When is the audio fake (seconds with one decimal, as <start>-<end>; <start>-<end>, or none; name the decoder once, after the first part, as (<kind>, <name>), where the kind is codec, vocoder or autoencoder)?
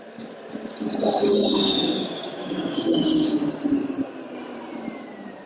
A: 1.2-3.5 (codec, DAC)